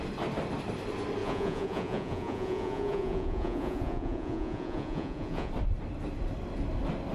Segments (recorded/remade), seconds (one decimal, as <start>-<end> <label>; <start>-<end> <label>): 0.0-1.2 recorded; 1.2-5.5 remade; 5.5-7.1 recorded